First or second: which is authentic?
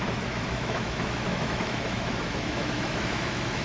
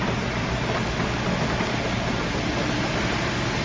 second